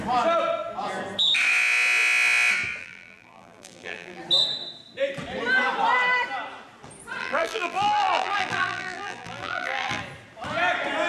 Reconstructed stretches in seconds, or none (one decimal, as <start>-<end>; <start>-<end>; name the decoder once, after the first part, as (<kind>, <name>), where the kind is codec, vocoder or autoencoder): 2.8-4.2 (vocoder, BigVGAN v2); 7.2-10.0